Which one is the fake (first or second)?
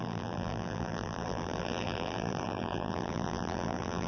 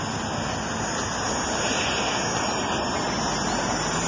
first